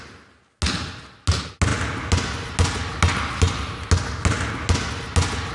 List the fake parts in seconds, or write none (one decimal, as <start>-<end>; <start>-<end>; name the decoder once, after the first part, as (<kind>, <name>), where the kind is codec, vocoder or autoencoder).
none